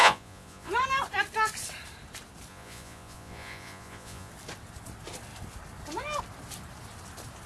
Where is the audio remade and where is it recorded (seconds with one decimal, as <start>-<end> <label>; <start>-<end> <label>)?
0.0-0.7 remade; 0.7-2.5 recorded; 2.5-4.3 remade; 4.3-7.5 recorded